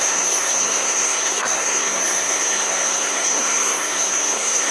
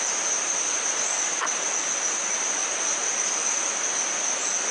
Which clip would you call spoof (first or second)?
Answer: first